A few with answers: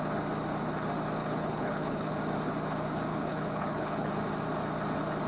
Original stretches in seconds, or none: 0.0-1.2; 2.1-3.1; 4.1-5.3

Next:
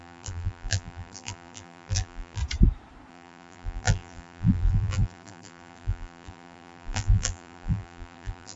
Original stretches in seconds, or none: 2.4-3.1

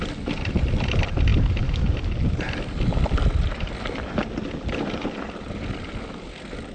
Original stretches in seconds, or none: 0.0-6.7

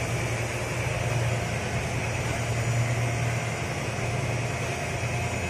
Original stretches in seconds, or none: 0.0-2.0; 2.5-5.5

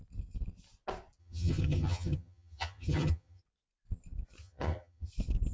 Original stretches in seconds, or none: 0.0-1.2; 3.4-4.4; 5.1-5.5